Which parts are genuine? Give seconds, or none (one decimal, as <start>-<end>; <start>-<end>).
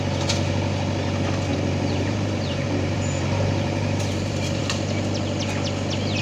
0.0-1.5; 4.6-6.2